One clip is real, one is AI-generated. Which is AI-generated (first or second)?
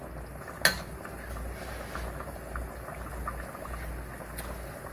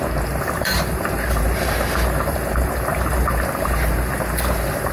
second